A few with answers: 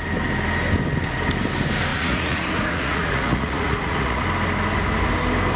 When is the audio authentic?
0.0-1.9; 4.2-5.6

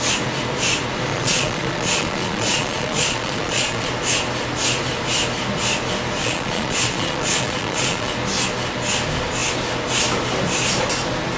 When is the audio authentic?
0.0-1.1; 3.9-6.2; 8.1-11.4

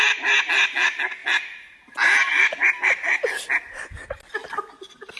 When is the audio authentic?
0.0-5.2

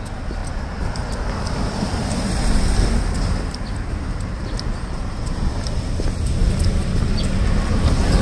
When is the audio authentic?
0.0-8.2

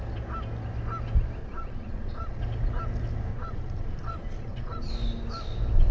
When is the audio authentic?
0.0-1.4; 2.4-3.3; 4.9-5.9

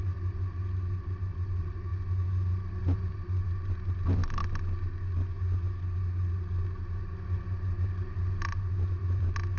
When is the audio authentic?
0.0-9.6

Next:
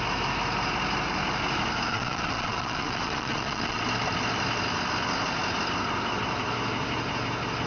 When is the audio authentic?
0.0-1.9; 3.8-7.7